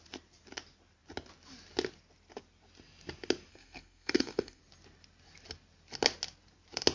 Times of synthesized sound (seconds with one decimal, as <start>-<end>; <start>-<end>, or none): 3.5-4.6